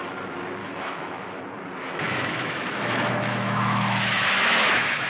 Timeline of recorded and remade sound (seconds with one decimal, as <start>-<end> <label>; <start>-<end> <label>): 0.0-0.6 recorded; 0.6-1.4 remade; 1.4-1.8 recorded; 1.8-5.1 remade